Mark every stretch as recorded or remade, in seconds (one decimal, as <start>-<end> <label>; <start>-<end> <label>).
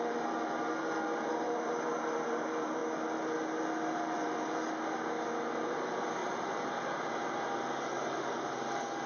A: 0.0-2.8 remade; 2.8-3.9 recorded; 3.9-4.6 remade; 4.6-5.7 recorded; 5.7-9.1 remade